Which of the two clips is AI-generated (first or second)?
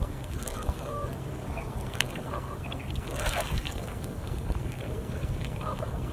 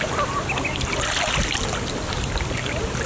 first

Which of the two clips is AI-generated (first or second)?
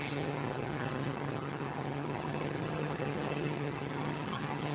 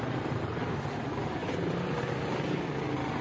first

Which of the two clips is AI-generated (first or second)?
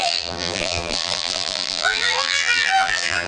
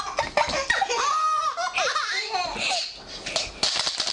first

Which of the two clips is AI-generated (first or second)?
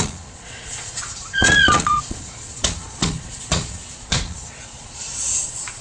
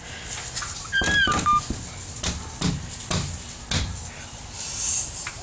first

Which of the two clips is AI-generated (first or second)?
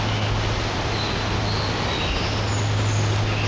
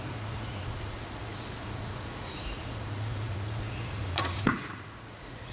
second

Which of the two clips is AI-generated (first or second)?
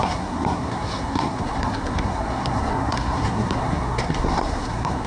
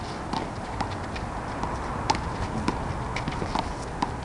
first